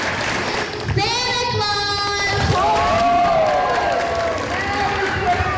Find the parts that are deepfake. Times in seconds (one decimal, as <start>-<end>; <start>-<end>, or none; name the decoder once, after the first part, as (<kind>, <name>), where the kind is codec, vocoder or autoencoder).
none